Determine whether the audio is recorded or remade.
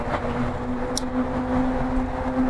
recorded